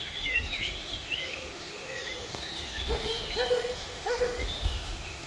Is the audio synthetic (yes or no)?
yes